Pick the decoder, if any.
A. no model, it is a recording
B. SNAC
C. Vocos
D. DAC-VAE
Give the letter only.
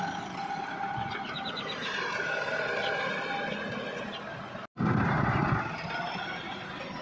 A